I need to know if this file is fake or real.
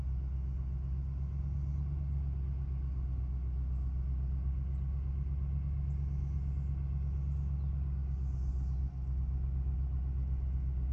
real